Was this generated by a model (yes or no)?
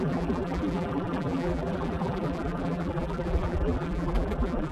yes